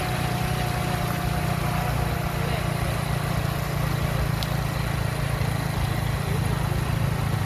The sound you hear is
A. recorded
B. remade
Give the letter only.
A